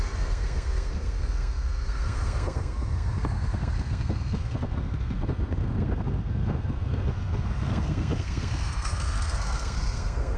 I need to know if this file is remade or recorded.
remade